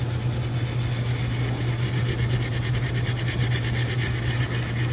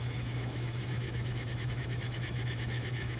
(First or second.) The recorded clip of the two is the first